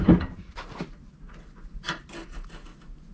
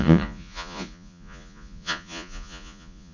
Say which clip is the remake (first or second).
second